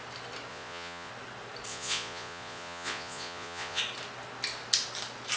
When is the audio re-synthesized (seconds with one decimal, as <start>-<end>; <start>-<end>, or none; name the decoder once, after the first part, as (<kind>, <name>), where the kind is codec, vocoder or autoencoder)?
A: 0.5-1.1 (vocoder, Vocos); 1.7-3.8